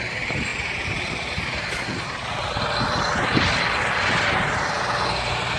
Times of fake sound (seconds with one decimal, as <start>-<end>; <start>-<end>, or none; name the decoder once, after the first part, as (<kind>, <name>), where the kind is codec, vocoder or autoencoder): none